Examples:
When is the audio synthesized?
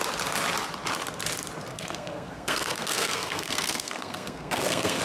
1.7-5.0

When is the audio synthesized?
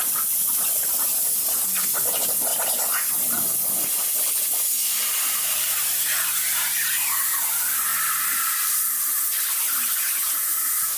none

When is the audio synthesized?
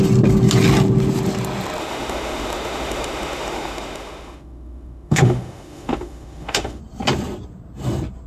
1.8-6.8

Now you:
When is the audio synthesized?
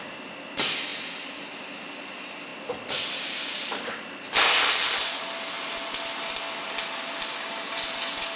none